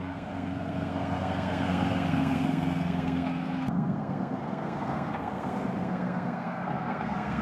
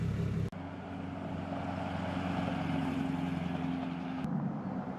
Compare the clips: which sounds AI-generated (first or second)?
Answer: first